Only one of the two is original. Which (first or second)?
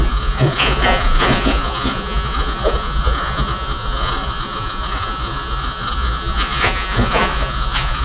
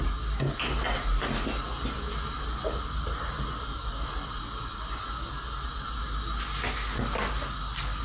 second